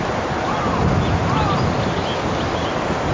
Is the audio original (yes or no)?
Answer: yes